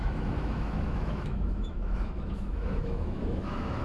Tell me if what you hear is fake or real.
fake